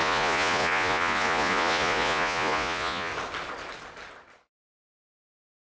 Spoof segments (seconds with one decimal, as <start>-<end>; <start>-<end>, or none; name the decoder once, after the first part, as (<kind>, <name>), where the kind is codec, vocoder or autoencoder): 0.0-3.1 (vocoder, Vocos)